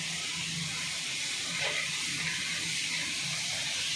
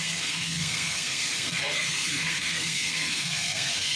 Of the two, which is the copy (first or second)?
second